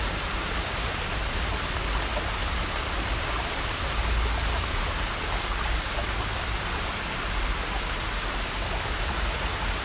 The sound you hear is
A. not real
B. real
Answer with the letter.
B